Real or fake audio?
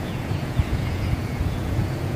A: fake